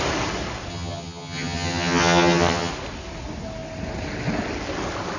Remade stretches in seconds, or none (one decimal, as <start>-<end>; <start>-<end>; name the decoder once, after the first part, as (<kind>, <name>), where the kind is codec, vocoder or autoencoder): 0.7-2.7 (vocoder, HiFi-GAN)